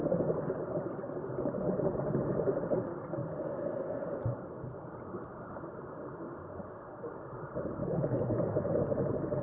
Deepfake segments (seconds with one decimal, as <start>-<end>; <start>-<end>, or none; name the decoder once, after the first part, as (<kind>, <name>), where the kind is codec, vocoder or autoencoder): 7.8-8.3 (autoencoder, DAC-VAE)